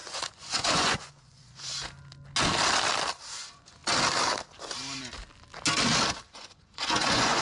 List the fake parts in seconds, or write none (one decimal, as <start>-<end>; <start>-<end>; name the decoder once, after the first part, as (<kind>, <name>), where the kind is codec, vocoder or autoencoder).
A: 0.0-1.7 (vocoder, Vocos); 3.4-3.8; 6.3-7.4